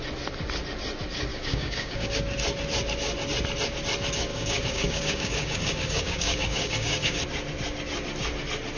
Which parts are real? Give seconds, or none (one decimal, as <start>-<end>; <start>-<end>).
0.0-1.3; 2.2-4.3; 7.2-8.8

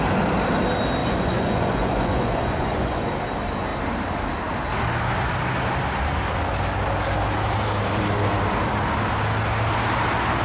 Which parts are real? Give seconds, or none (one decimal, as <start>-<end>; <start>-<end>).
0.0-1.0; 3.1-10.4

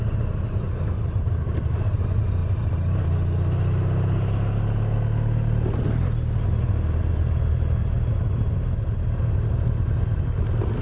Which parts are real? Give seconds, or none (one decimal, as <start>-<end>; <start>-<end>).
0.0-10.8

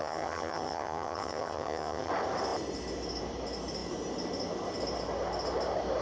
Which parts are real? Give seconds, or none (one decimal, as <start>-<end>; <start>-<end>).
2.1-6.0

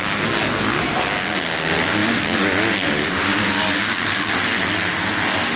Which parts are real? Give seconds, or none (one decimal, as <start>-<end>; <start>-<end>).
0.0-5.6

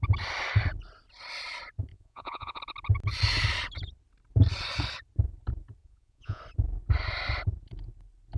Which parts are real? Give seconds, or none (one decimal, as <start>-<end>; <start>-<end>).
0.0-1.9; 2.6-5.8; 6.4-8.4

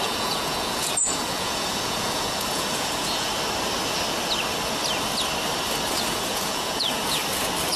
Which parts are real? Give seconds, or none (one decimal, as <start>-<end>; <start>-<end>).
3.3-5.9; 7.2-7.8

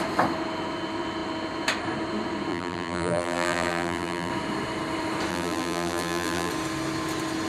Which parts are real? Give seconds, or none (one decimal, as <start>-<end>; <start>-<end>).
0.0-2.5; 4.3-5.3; 6.5-7.5